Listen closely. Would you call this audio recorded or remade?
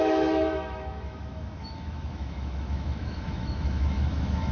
remade